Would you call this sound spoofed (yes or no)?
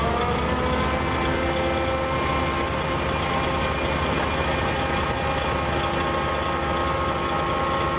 no